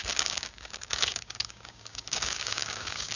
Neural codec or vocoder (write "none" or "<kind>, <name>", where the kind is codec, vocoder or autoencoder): codec, DAC